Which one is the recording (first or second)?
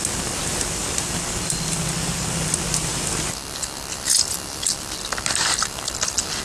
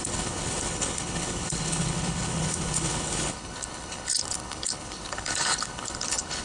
first